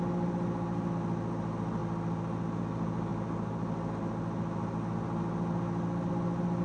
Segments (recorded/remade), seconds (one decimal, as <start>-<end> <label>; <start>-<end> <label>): 0.0-6.6 recorded